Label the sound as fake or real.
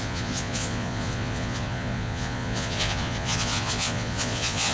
fake